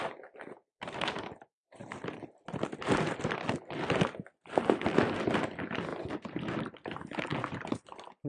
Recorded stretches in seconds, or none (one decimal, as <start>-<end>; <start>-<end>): 0.0-8.3